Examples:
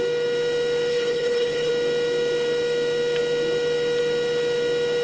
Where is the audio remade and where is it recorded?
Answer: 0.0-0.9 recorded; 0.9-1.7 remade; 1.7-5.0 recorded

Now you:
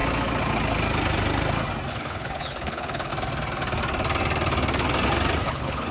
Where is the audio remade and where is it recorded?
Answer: 0.0-1.9 recorded; 1.9-3.1 remade; 3.1-5.5 recorded; 5.5-5.9 remade

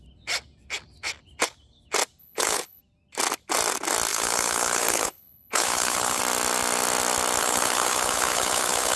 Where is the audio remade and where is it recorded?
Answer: 0.0-2.2 recorded; 2.2-2.8 remade; 2.8-4.1 recorded; 4.1-6.2 remade; 6.2-7.4 recorded; 7.4-9.0 remade